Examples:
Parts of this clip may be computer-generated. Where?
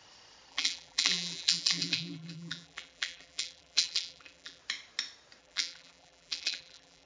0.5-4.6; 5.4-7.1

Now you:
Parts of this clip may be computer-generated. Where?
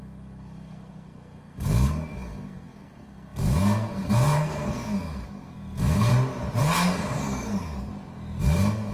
0.0-6.1; 6.6-7.9; 8.4-8.9